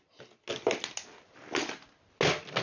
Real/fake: real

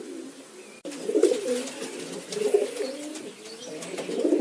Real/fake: real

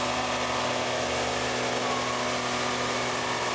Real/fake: real